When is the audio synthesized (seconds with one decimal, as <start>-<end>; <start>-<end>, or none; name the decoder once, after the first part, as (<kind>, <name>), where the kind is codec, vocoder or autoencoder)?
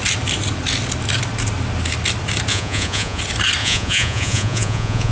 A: 2.5-3.2 (vocoder, Vocos); 3.6-5.1